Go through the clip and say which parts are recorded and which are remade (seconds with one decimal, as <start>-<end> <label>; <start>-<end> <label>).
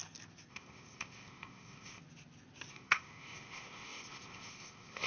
0.0-0.5 recorded; 0.5-2.0 remade; 2.0-2.7 recorded; 2.7-5.1 remade